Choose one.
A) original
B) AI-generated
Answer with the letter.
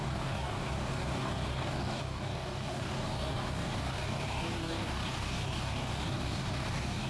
B